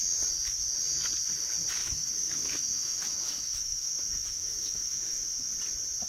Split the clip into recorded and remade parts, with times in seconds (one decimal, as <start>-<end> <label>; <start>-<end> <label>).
0.0-1.8 recorded; 1.8-5.5 remade; 5.5-6.1 recorded